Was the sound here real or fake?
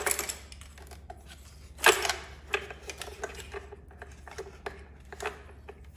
real